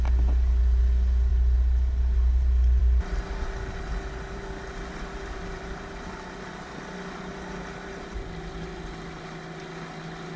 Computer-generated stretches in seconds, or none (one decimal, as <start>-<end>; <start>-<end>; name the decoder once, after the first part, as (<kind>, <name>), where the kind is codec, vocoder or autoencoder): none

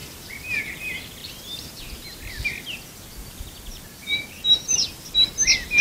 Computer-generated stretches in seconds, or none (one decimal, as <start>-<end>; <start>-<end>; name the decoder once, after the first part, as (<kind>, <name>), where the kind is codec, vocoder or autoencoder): 0.0-0.6 (vocoder, BigVGAN v2); 1.2-1.8; 3.7-4.9

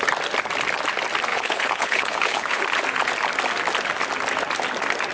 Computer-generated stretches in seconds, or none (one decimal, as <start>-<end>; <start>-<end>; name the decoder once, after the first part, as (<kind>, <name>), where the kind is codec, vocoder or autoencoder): 1.3-2.6 (codec, HILCodec)